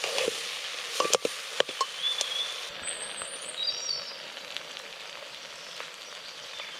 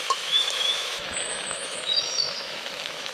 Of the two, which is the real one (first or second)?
first